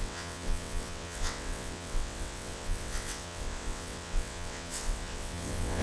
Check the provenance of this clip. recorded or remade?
remade